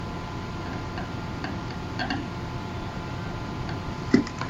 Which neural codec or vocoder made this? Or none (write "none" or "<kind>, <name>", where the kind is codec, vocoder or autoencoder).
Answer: none